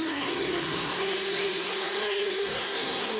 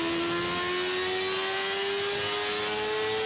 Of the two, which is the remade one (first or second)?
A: first